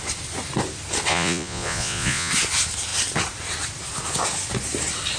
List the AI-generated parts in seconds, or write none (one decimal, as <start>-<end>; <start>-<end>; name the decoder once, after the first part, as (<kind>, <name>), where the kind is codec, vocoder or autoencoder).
1.1-2.3 (vocoder, Vocos)